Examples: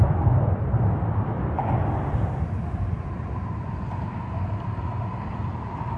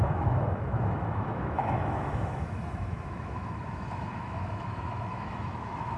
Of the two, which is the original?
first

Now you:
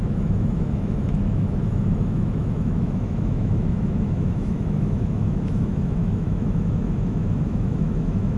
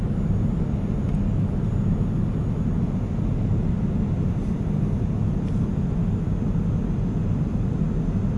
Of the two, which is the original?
second